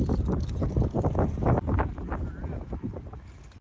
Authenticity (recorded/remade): recorded